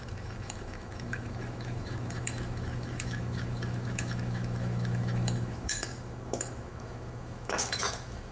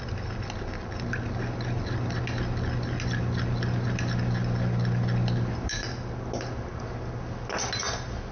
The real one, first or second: second